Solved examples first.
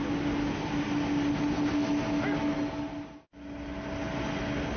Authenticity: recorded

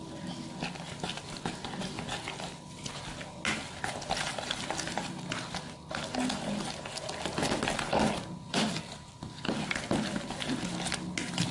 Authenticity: recorded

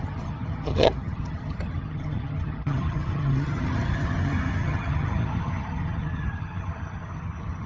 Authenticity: remade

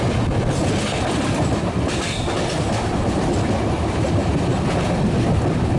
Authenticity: recorded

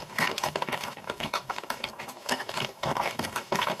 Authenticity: remade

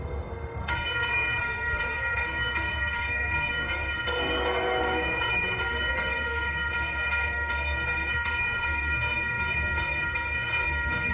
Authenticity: remade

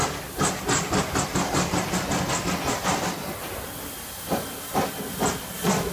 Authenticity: recorded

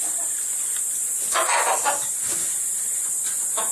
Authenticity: recorded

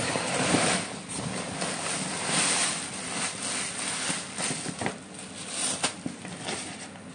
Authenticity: recorded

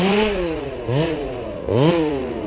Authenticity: remade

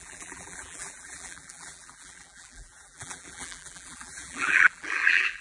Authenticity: remade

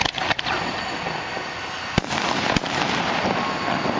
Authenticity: recorded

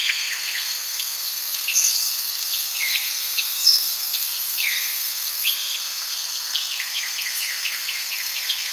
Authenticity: remade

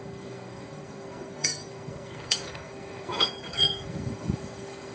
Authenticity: remade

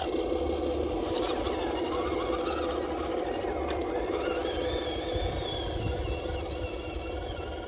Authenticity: recorded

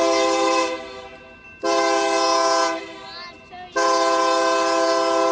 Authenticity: recorded